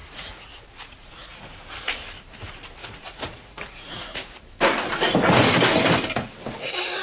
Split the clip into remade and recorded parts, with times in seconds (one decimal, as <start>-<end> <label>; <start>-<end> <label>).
0.0-1.5 remade; 1.5-2.8 recorded; 2.8-4.3 remade; 4.3-7.0 recorded